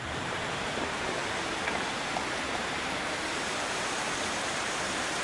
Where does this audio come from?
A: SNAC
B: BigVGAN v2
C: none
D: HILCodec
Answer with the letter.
B